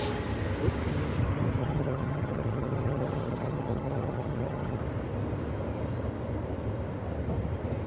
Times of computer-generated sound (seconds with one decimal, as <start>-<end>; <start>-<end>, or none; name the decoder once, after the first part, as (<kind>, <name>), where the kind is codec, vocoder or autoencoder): 1.6-4.8 (vocoder, HiFi-GAN)